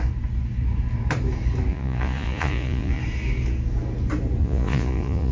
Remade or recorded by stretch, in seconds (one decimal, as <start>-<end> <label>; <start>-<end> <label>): 0.0-1.7 recorded; 1.7-3.0 remade; 3.0-4.4 recorded; 4.4-5.3 remade